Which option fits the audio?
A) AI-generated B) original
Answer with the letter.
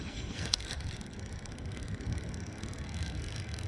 A